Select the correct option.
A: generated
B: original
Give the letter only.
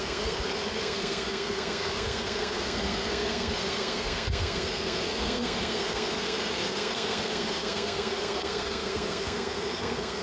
A